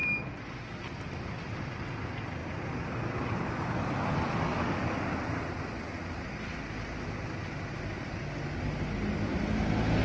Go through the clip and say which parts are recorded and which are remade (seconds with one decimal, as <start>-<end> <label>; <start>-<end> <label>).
0.0-10.0 recorded